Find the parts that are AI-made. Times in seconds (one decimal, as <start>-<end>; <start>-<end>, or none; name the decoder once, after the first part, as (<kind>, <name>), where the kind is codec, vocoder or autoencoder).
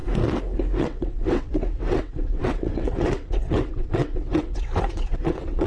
0.8-5.7 (vocoder, WaveNeXt)